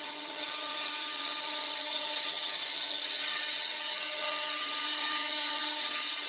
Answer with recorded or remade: remade